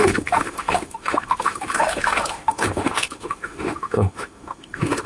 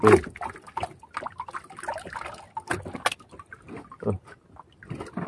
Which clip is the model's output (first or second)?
first